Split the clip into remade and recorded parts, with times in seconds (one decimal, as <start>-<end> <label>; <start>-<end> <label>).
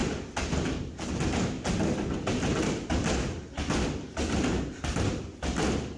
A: 0.0-6.0 recorded